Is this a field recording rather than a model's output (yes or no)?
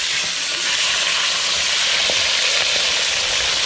yes